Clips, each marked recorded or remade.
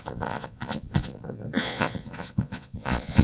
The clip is remade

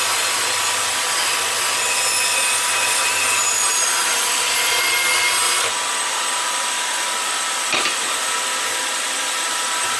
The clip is recorded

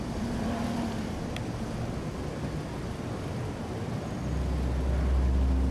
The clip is recorded